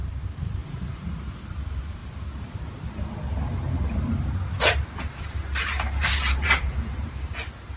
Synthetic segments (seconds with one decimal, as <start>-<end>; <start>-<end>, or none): 0.6-1.4; 5.6-7.3